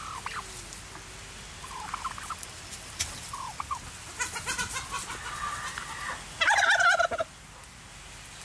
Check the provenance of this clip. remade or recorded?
recorded